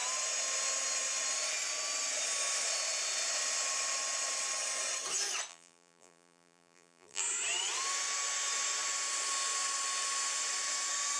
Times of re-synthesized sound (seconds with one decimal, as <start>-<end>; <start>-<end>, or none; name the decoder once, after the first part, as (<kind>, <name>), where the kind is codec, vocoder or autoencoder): 5.5-7.2 (vocoder, BigVGAN v2)